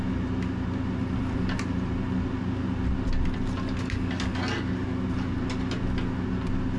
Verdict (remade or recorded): recorded